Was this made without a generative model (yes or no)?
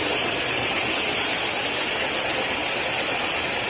yes